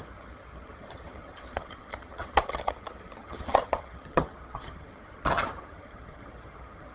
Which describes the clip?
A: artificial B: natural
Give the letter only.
A